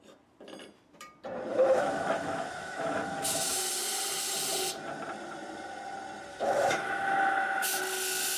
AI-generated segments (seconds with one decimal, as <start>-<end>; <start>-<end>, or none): 1.5-3.7; 6.3-7.8

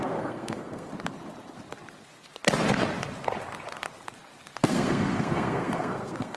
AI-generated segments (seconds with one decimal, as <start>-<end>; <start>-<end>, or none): 0.0-0.9; 4.7-6.4

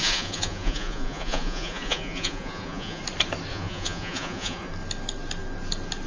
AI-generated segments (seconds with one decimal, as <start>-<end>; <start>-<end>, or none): 0.0-3.0; 3.5-4.7

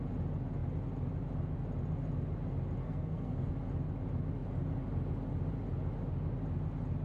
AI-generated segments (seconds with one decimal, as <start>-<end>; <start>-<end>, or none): 2.8-3.5

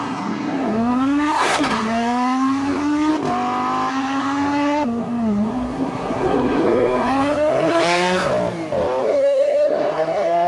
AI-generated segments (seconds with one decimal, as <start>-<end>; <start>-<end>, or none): 0.0-3.1; 3.9-8.3; 9.0-10.5

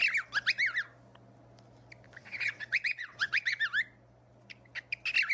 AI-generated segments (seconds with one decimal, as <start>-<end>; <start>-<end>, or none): 2.2-3.6

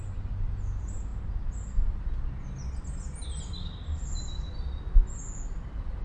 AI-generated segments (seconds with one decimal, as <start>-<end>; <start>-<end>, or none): none

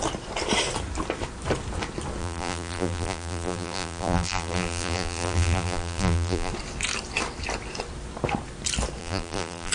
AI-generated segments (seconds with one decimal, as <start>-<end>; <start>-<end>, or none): 2.2-6.5; 9.0-9.7